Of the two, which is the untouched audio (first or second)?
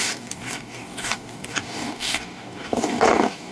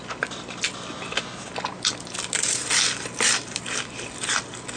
second